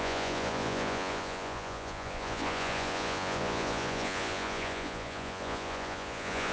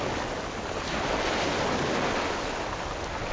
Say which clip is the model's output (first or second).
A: first